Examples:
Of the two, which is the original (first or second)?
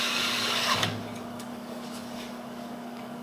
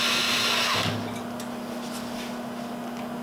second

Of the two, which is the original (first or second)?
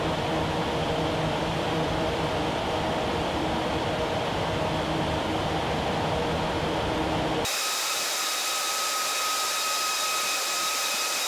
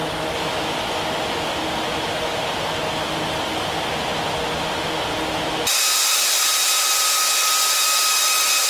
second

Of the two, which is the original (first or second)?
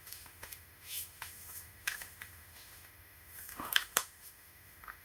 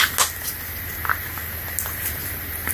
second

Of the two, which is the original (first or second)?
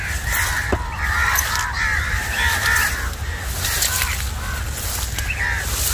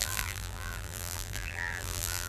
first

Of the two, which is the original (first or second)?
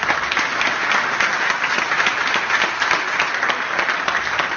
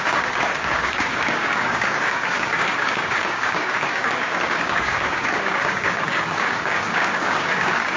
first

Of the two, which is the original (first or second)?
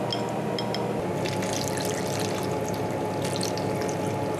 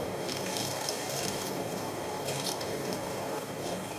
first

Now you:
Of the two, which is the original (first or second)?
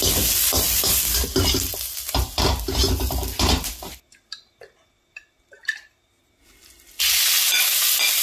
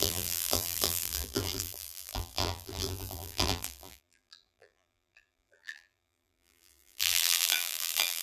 first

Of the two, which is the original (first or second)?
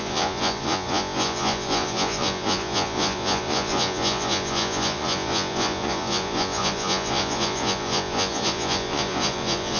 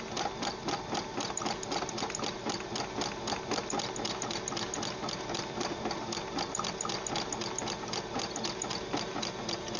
second